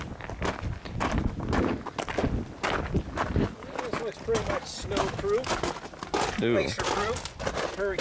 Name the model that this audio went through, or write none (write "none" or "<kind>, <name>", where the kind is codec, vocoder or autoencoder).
none